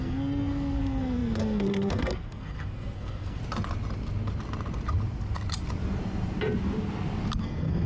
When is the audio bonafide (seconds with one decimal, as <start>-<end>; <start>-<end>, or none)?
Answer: 3.4-7.4